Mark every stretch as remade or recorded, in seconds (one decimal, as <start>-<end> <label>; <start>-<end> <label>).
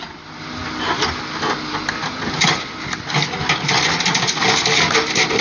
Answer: 0.0-5.4 recorded